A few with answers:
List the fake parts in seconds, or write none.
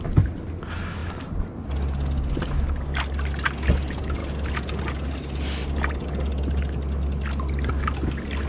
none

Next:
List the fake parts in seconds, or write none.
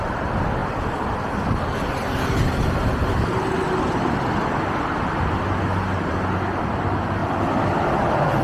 0.6-2.3 (vocoder, BigVGAN v2); 3.7-5.4; 7.2-8.4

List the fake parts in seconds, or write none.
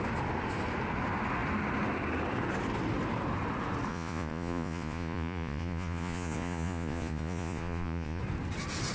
3.9-8.2 (vocoder, Vocos)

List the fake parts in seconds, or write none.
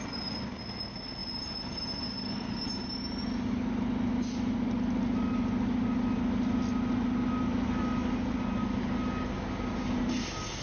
none